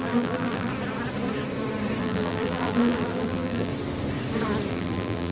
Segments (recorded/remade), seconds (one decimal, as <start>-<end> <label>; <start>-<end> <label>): 0.0-0.7 remade; 0.7-2.0 recorded; 2.0-3.7 remade; 3.7-4.7 recorded; 4.7-5.3 remade